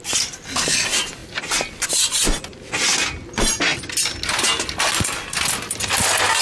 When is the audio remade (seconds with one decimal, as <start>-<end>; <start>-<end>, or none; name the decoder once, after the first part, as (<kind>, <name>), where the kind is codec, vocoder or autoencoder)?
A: none